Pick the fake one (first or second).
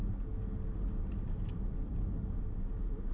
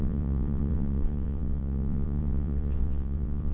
second